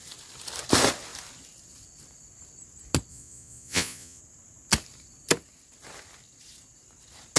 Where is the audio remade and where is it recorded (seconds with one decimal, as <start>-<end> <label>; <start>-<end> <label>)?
0.0-3.1 recorded; 3.1-4.2 remade; 4.2-7.4 recorded